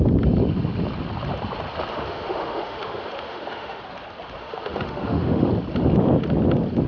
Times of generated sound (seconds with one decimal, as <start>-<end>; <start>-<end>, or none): 1.9-3.8; 4.4-5.5